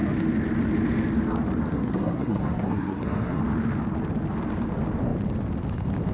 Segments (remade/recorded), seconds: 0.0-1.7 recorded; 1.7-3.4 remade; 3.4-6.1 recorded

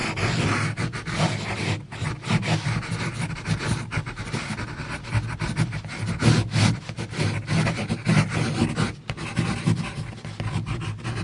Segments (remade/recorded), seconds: 0.0-11.2 recorded

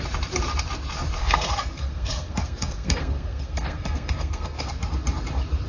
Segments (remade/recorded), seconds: 0.0-1.2 recorded; 1.2-4.6 remade; 4.6-5.7 recorded

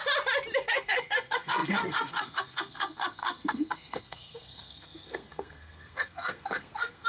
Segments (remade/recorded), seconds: 0.0-0.7 recorded; 0.7-7.1 remade

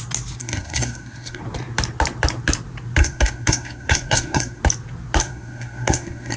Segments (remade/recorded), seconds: 0.0-0.4 recorded; 0.4-1.4 remade; 1.4-3.0 recorded; 3.0-4.6 remade; 4.6-5.2 recorded; 5.2-6.4 remade

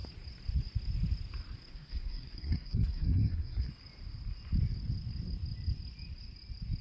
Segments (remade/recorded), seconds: 0.0-1.7 recorded; 1.7-3.7 remade; 3.7-6.8 recorded

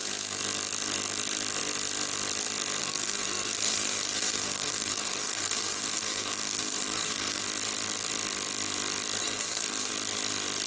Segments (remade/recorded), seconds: 0.0-2.8 recorded; 2.8-7.4 remade; 7.4-9.2 recorded; 9.2-9.9 remade; 9.9-10.7 recorded

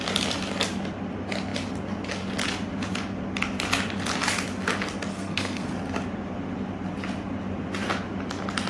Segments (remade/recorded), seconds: 0.0-5.1 recorded; 5.1-5.7 remade; 5.7-8.7 recorded